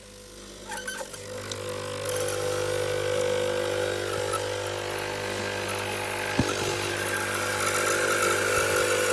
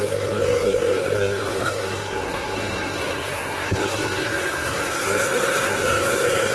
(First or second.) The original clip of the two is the first